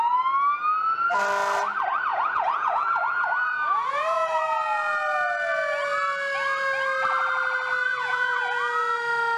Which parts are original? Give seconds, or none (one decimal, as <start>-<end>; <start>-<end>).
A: 0.0-2.1; 4.4-7.9; 8.4-9.4

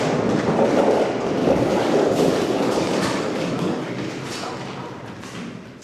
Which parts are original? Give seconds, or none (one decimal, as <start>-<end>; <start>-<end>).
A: 0.0-1.4; 4.1-5.8

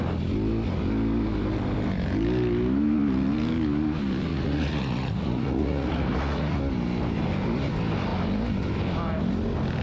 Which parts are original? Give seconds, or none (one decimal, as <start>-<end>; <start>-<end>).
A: 0.0-4.3; 6.6-9.8

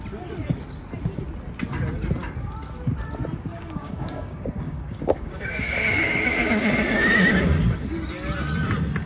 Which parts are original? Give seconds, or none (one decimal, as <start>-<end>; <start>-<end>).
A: 0.0-3.5; 7.4-9.1

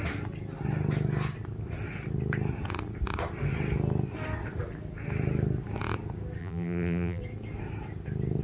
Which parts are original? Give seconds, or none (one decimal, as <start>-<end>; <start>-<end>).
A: 0.0-6.4; 7.2-8.4

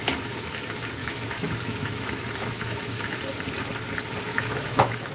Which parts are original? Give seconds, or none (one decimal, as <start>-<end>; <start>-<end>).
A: 0.0-1.0; 3.2-4.3